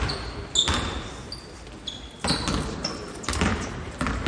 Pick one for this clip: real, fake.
real